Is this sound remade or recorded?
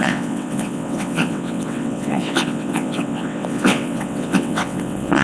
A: remade